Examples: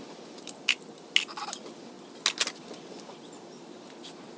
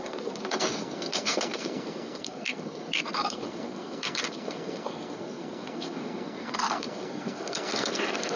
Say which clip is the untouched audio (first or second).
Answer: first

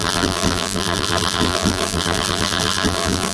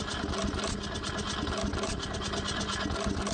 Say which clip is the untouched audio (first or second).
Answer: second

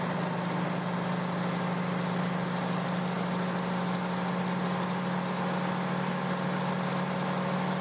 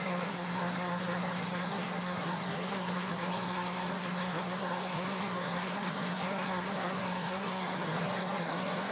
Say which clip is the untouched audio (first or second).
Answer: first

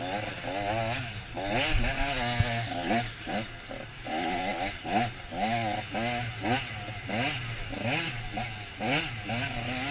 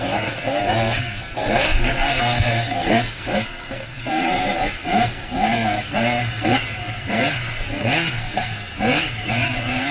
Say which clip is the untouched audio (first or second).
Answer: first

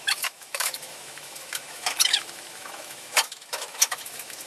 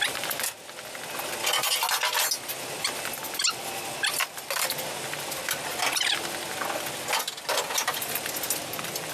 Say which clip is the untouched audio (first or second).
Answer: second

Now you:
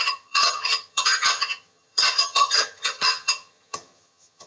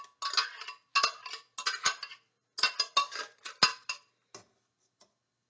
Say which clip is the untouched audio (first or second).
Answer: second